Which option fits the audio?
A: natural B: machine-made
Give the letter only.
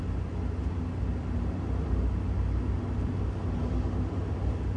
A